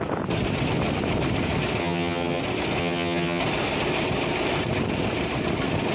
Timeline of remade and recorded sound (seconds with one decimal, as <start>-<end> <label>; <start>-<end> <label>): 0.0-1.8 recorded; 1.8-2.4 remade; 2.4-2.8 recorded; 2.8-3.4 remade; 3.4-5.9 recorded